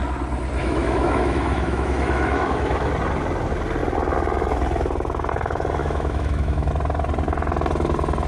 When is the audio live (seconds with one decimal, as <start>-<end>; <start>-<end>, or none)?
0.0-0.6; 2.9-5.8; 6.7-8.3